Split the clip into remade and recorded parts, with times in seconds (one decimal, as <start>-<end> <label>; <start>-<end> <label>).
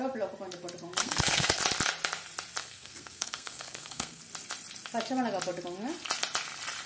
0.0-1.0 recorded; 1.0-1.6 remade; 1.6-2.6 recorded; 2.6-4.2 remade; 4.2-6.9 recorded